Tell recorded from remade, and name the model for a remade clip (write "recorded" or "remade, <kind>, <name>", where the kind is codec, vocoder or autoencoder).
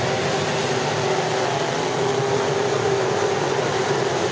recorded